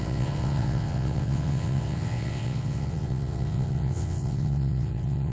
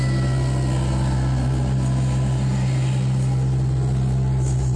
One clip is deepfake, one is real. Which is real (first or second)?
second